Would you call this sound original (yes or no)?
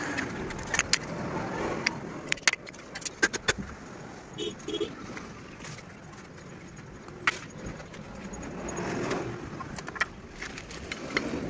yes